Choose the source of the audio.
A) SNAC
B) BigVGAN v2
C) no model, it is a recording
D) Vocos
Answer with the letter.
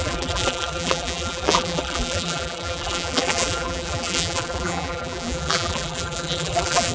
B